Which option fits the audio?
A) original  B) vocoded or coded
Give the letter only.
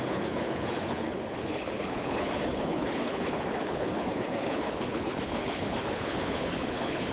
B